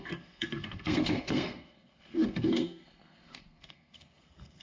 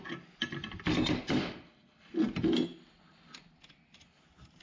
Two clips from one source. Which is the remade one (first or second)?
first